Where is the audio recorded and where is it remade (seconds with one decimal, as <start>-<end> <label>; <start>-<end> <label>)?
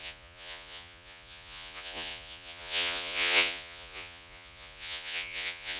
0.0-5.8 remade